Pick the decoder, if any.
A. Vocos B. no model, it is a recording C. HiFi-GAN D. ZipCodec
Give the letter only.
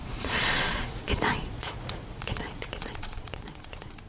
A